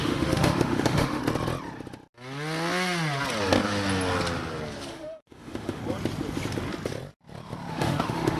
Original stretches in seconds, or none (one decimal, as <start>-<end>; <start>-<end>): 1.2-4.9; 5.8-7.7